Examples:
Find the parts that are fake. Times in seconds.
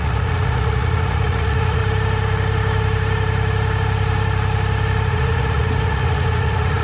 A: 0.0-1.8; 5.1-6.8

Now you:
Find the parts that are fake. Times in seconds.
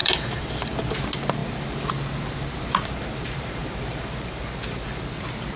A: 0.0-0.8; 1.4-4.4